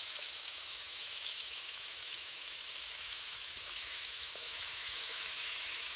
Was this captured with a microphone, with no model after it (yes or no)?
no